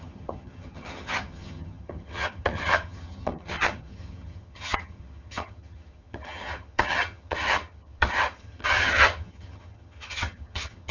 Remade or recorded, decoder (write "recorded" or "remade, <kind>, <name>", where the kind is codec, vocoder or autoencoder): remade, vocoder, HiFi-GAN